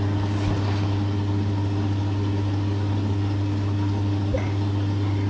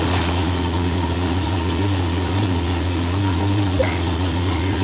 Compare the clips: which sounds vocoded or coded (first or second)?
second